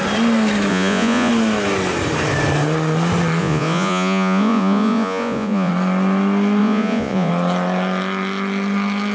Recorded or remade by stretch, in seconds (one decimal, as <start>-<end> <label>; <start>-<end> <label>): 0.0-0.7 recorded; 0.7-1.3 remade; 1.3-3.4 recorded; 3.4-5.7 remade; 5.7-6.6 recorded; 6.6-7.3 remade; 7.3-9.1 recorded